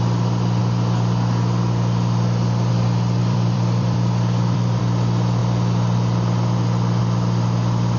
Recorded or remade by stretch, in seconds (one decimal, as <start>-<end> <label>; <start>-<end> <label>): 0.0-3.2 recorded; 3.2-4.8 remade; 4.8-8.0 recorded